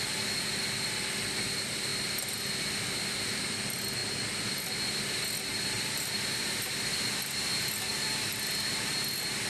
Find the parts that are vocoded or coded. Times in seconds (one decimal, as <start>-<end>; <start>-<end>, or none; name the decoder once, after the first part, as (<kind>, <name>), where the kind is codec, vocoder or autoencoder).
5.5-6.8 (vocoder, BigVGAN v2)